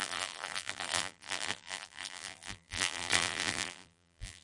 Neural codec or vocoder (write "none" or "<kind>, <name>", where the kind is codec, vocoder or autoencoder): vocoder, BigVGAN v2